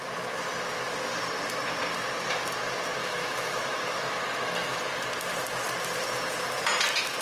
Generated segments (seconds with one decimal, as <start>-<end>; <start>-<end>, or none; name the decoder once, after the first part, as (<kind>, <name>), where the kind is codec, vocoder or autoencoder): 3.0-4.8 (autoencoder, DAC-VAE)